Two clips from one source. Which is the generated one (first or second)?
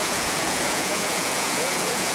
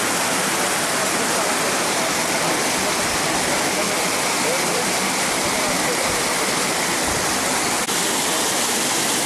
first